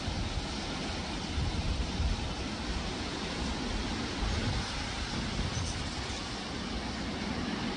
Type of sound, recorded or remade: recorded